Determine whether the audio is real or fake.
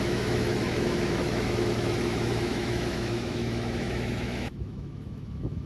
fake